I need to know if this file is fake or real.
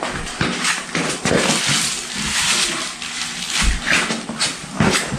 real